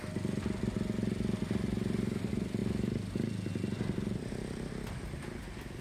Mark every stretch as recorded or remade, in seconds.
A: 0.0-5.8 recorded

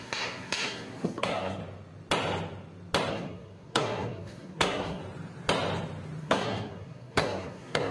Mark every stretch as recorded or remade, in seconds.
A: 0.0-1.6 remade; 1.6-3.1 recorded; 3.1-5.0 remade; 5.0-6.2 recorded; 6.2-7.9 remade

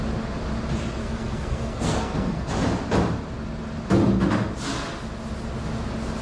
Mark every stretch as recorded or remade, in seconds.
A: 0.0-1.0 recorded; 1.0-2.5 remade; 2.5-6.2 recorded

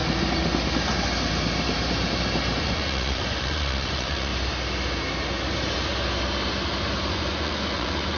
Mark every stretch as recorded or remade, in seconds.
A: 0.0-2.6 recorded; 2.6-4.3 remade; 4.3-7.1 recorded; 7.1-8.2 remade

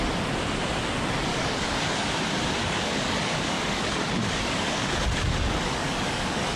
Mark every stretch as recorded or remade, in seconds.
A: 0.0-1.3 recorded; 1.3-2.1 remade; 2.1-2.6 recorded; 2.6-6.6 remade

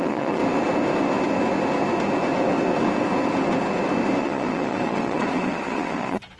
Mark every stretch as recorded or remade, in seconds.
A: 0.0-0.4 remade; 0.4-4.2 recorded; 4.2-6.4 remade

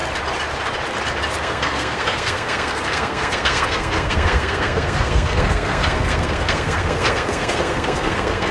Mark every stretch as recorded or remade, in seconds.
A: 0.0-1.4 recorded; 1.4-8.5 remade

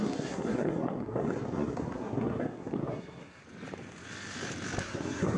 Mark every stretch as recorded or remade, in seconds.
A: 0.0-3.4 remade; 3.4-4.8 recorded; 4.8-5.4 remade